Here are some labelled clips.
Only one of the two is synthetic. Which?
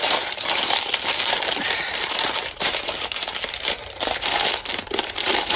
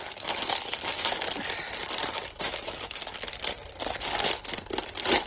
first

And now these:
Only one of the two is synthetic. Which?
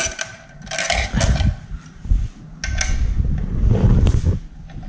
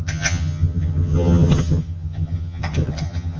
second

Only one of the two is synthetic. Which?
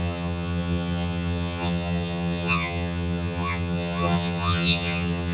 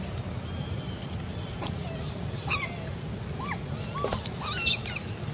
first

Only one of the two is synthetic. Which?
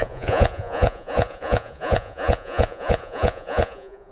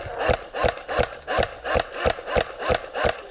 first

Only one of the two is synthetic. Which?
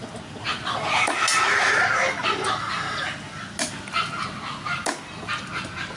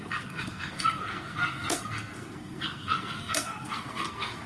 second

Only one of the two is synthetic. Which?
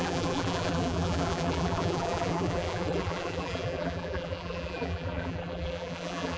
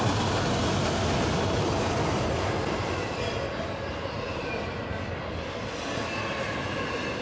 first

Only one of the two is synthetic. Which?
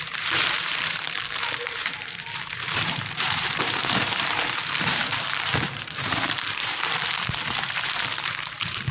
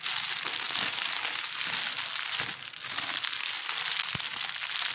first